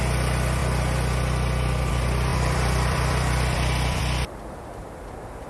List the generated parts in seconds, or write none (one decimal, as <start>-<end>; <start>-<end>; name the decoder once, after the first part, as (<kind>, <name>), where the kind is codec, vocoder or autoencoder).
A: 2.3-4.0 (vocoder, BigVGAN v2)

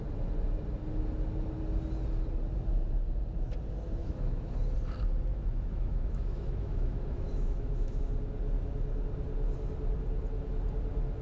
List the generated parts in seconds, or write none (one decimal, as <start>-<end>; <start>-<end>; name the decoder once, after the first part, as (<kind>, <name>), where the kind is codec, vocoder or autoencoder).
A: 4.0-4.5 (autoencoder, DAC-VAE); 5.3-8.0